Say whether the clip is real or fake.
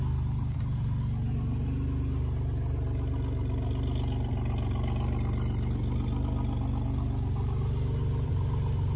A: real